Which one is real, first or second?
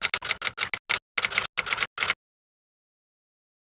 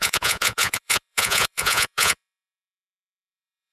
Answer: first